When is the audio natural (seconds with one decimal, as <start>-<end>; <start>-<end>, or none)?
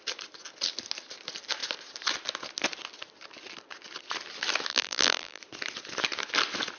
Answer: 0.0-4.7; 5.4-6.8